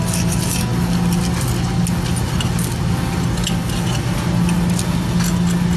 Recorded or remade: recorded